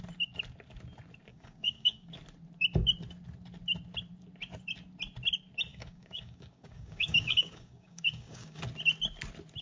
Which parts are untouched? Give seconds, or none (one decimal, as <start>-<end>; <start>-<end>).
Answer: 0.0-1.3; 2.1-5.7; 8.6-9.6

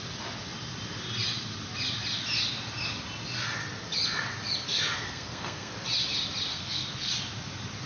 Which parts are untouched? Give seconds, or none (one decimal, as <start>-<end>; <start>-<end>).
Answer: 0.0-4.7; 5.7-6.5; 7.1-7.9

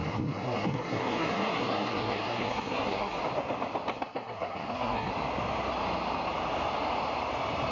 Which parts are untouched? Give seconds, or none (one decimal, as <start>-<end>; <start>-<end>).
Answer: 3.2-3.9; 5.1-7.7

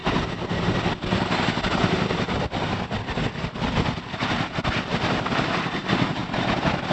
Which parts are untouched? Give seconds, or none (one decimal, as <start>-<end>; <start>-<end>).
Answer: 0.0-6.9

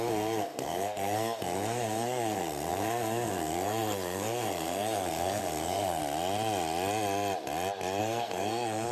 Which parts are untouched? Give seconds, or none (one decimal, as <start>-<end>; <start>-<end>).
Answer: 6.0-8.0

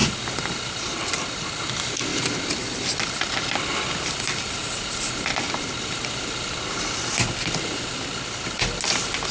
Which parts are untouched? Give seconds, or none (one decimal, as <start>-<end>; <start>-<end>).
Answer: 0.0-9.3

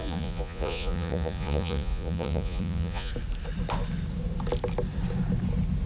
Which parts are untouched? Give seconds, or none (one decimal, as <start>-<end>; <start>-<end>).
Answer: 3.1-5.9